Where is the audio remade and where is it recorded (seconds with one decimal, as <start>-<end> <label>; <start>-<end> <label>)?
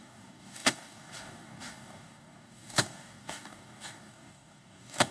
0.0-5.1 remade